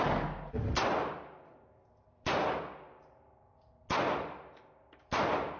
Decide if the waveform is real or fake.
real